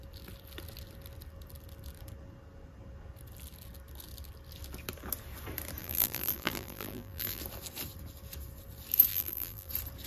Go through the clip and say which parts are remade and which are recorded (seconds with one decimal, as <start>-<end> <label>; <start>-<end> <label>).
0.0-5.8 recorded; 5.8-7.4 remade; 7.4-9.1 recorded; 9.1-9.7 remade; 9.7-10.1 recorded

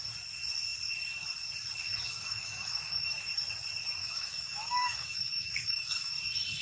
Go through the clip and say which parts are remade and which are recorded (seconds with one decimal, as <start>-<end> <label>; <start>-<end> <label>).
0.0-2.1 recorded; 2.1-3.2 remade; 3.2-4.0 recorded; 4.0-6.1 remade; 6.1-6.6 recorded

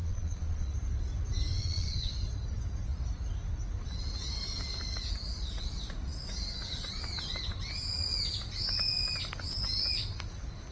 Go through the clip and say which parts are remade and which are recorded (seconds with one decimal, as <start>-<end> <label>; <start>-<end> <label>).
0.0-0.7 remade; 0.7-1.6 recorded; 1.6-2.1 remade; 2.1-10.7 recorded

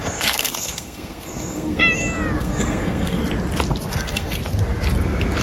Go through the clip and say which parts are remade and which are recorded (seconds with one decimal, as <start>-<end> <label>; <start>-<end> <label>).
0.0-1.8 remade; 1.8-2.4 recorded; 2.4-3.2 remade; 3.2-3.9 recorded; 3.9-4.4 remade; 4.4-5.4 recorded

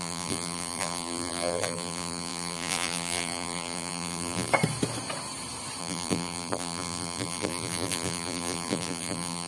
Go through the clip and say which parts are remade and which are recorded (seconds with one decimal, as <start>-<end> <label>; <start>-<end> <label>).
0.0-4.5 remade; 4.5-5.8 recorded; 5.8-9.5 remade

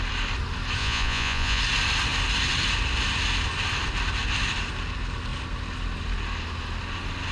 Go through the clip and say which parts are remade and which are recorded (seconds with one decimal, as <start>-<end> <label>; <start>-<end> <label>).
0.0-0.8 recorded; 0.8-1.6 remade; 1.6-7.3 recorded

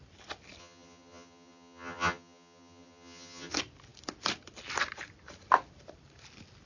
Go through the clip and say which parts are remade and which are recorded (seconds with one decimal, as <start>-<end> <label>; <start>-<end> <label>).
0.0-0.6 recorded; 0.6-3.5 remade; 3.5-6.7 recorded

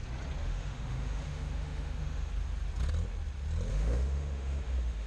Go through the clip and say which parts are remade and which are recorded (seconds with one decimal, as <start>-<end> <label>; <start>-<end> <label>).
0.0-0.4 recorded; 0.4-2.3 remade; 2.3-3.7 recorded; 3.7-5.1 remade